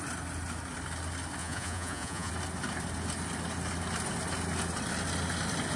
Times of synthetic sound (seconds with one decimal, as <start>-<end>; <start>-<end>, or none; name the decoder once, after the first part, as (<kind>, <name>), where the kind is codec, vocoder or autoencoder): 1.4-2.3 (vocoder, Vocos)